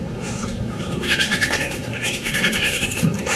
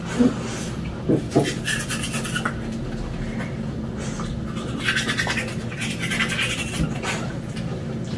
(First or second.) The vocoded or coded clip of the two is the first